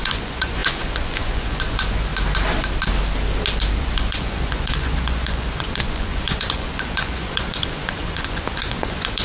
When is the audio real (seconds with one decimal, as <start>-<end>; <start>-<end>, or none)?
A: 2.1-3.8

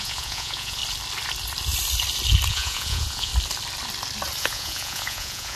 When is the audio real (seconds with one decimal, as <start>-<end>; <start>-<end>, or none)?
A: 0.8-2.5; 3.3-4.4

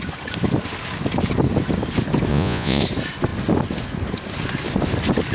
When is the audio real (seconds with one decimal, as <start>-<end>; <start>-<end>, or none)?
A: 0.0-2.3; 2.8-5.3

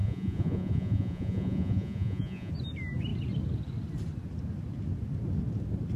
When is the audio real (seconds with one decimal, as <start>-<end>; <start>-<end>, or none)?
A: 2.5-6.0

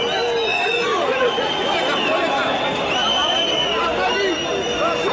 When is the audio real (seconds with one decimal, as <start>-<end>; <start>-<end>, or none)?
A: 0.0-0.5; 1.8-5.1

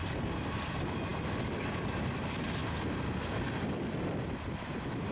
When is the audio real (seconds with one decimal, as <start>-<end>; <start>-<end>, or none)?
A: 0.0-5.1